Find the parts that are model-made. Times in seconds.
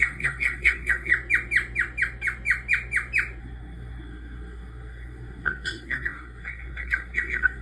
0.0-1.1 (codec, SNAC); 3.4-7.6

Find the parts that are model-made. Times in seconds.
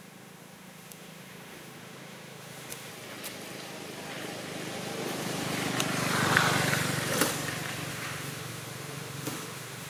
0.0-2.9 (autoencoder, DAC-VAE); 7.9-9.9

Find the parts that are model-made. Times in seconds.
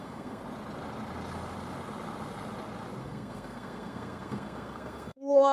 0.0-0.4 (codec, SNAC); 3.0-5.5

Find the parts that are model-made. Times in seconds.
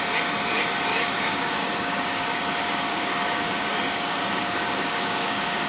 0.9-2.4 (codec, DAC); 2.9-5.7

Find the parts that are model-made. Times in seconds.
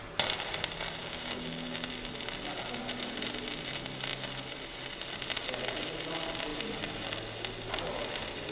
1.0-1.9 (codec, DAC)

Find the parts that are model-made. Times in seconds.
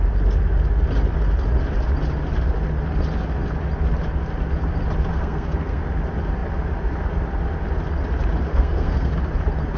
5.1-5.8 (codec, SNAC); 8.5-9.1